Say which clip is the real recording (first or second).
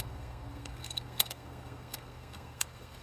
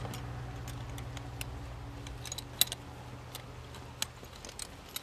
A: second